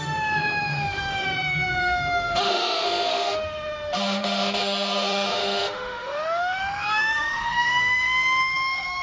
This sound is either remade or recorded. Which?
remade